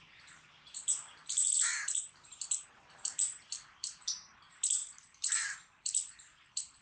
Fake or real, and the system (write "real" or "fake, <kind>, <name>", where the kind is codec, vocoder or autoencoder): fake, vocoder, BigVGAN v2